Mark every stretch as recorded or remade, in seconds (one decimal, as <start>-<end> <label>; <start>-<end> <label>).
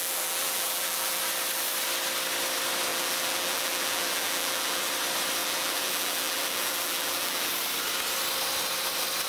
0.0-1.2 remade; 1.2-2.9 recorded; 2.9-4.9 remade; 4.9-5.4 recorded; 5.4-7.5 remade; 7.5-9.3 recorded